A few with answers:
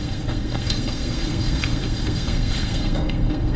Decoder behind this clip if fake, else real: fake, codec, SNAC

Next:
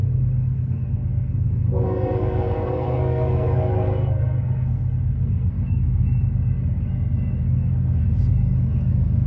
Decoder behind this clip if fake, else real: fake, codec, SNAC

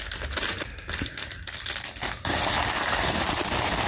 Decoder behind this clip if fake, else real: real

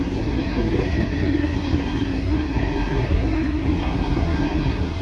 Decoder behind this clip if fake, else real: fake, codec, SNAC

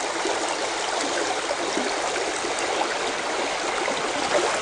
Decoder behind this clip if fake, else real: real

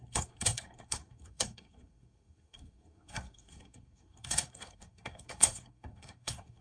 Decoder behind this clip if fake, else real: fake, codec, SNAC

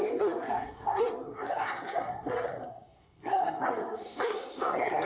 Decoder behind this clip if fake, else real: fake, codec, SNAC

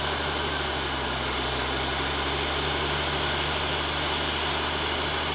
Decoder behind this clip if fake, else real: real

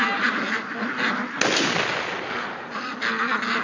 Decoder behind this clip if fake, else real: real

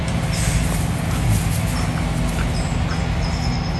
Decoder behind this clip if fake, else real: real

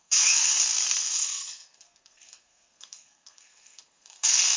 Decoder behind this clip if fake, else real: fake, codec, SNAC